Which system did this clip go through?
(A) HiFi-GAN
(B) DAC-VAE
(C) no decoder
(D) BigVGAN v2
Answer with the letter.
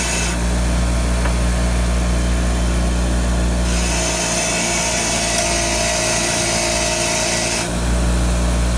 C